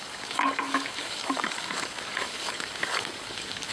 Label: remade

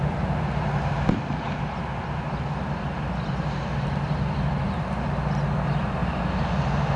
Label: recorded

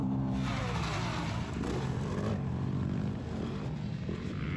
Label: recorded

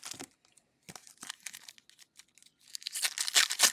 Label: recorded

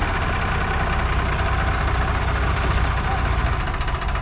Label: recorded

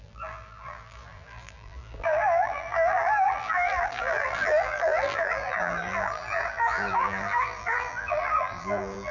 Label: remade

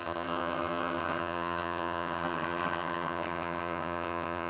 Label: remade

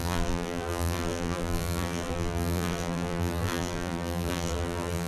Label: remade